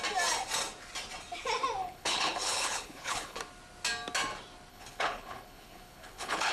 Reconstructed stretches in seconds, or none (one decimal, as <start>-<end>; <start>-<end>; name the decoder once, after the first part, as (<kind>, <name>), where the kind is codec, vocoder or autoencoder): 1.8-3.4 (codec, HILCodec); 4.7-6.5